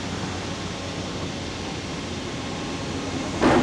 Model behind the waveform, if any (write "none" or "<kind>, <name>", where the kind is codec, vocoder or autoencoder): none